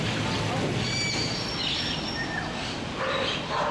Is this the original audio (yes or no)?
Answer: yes